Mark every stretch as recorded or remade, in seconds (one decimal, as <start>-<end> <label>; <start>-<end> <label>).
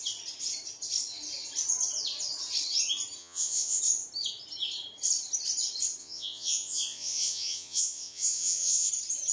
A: 0.0-3.2 recorded; 3.2-3.8 remade; 3.8-6.0 recorded; 6.0-8.9 remade; 8.9-9.3 recorded